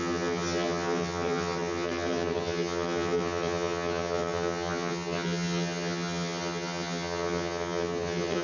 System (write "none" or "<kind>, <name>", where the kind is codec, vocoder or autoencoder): vocoder, HiFi-GAN